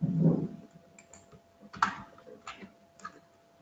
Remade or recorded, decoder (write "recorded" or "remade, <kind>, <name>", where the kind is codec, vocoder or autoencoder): recorded